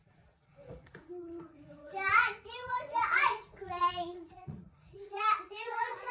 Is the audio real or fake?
fake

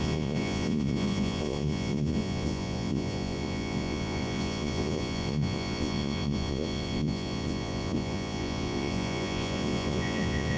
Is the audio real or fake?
fake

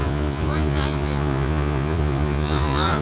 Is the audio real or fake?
fake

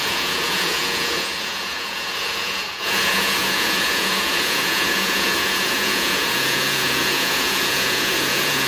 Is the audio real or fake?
fake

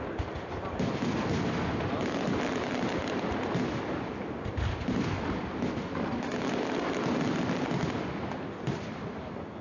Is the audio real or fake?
real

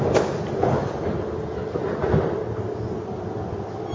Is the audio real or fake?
real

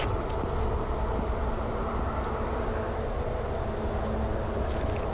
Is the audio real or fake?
real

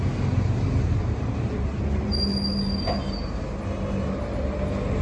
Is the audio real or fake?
real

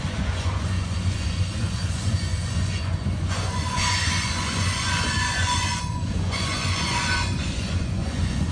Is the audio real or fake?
fake